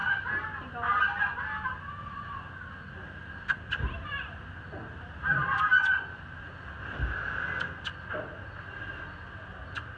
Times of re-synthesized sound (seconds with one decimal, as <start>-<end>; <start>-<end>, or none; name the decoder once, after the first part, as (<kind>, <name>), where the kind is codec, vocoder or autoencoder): 2.9-5.7 (vocoder, BigVGAN v2)

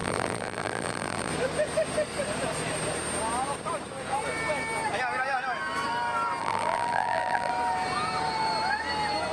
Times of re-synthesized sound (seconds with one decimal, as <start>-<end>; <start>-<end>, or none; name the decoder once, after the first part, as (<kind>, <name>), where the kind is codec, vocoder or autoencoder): 0.0-1.3 (vocoder, BigVGAN v2); 6.4-7.5

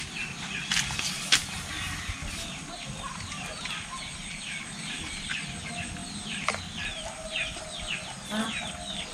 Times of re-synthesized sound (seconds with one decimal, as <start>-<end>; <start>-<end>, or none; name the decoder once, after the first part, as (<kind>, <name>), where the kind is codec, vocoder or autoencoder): 6.0-6.6 (vocoder, BigVGAN v2)

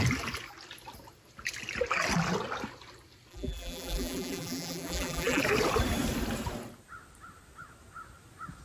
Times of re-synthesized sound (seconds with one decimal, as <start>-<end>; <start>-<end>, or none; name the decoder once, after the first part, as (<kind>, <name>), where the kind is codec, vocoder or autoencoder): 3.3-5.4 (vocoder, BigVGAN v2)

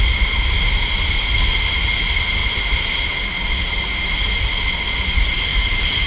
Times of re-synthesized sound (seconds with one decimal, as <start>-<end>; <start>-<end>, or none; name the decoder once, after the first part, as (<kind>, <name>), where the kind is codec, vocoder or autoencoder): 2.4-3.7 (vocoder, BigVGAN v2); 5.5-6.1

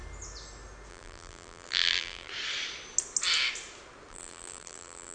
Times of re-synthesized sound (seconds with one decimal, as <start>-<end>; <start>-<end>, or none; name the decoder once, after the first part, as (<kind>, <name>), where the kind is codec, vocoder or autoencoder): 0.9-2.3 (vocoder, BigVGAN v2); 4.1-5.1

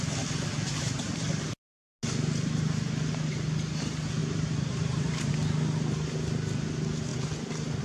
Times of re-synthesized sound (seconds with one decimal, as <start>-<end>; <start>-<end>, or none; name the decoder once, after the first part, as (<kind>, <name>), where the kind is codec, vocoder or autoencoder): 0.7-1.8 (vocoder, BigVGAN v2); 4.2-5.3

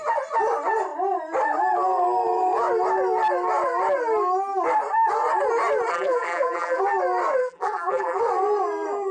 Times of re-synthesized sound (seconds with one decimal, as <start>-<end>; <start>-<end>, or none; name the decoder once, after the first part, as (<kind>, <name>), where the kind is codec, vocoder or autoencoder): 5.9-6.8 (vocoder, BigVGAN v2); 7.4-8.2